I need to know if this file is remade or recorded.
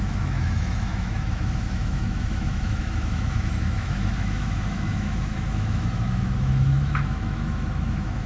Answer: remade